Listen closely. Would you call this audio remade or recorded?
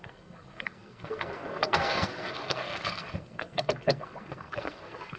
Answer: remade